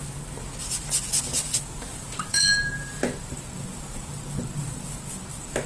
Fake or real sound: real